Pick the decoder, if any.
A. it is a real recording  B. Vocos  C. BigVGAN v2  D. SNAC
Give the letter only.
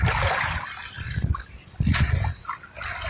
A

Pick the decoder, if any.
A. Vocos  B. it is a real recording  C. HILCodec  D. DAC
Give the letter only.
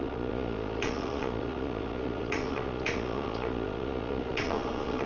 A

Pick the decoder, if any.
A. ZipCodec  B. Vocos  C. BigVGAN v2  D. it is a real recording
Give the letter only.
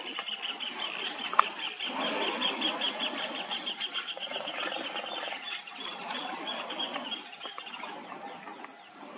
D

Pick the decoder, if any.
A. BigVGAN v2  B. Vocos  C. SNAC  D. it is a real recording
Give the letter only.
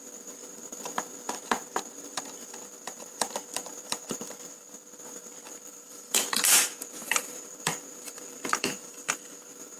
A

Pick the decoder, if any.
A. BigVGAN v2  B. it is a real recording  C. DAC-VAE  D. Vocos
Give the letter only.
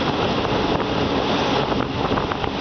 B